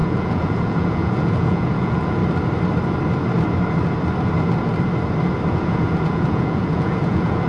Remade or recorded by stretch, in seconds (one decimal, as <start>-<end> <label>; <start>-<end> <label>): 0.0-2.2 remade; 2.2-5.5 recorded; 5.5-7.5 remade